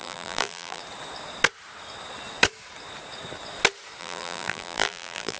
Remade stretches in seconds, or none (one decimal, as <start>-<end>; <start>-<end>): 0.0-0.8; 4.0-5.4